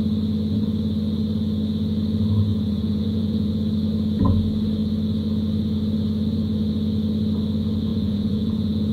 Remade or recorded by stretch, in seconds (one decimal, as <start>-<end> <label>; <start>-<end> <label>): 0.0-2.5 recorded; 2.5-3.5 remade; 3.5-7.9 recorded; 7.9-8.9 remade